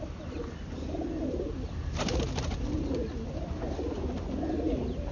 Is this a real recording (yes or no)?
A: yes